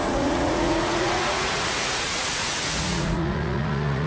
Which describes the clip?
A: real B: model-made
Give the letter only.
B